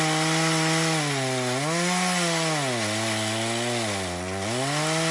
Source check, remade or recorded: recorded